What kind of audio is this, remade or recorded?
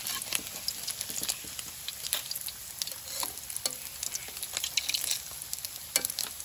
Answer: recorded